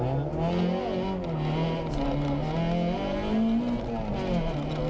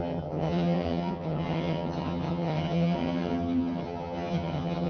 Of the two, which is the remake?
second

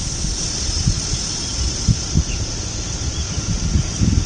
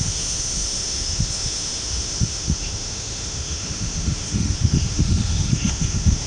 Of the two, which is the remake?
second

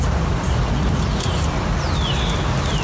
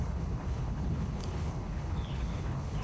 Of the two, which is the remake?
second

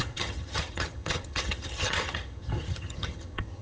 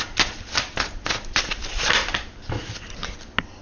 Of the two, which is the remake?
first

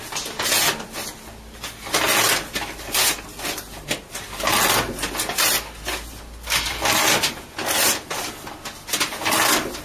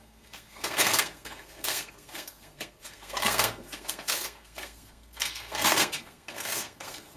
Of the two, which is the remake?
second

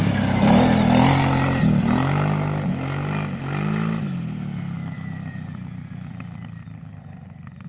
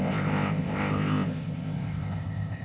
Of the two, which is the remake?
second